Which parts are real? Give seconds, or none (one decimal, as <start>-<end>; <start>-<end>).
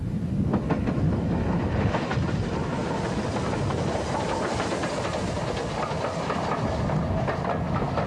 0.0-8.1